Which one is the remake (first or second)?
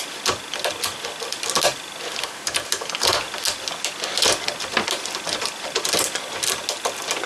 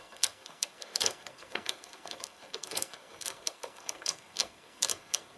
second